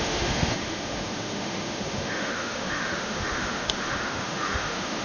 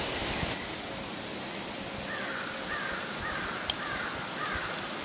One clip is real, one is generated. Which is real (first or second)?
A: second